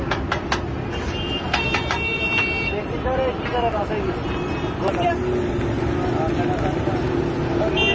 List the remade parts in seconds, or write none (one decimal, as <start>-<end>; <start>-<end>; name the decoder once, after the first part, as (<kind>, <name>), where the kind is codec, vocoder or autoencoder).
none